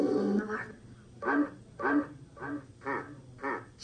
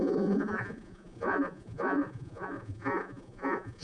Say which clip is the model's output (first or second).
second